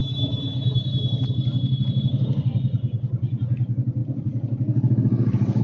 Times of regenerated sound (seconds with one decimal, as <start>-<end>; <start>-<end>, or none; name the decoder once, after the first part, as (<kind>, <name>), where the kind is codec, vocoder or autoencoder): 0.0-5.6 (vocoder, BigVGAN v2)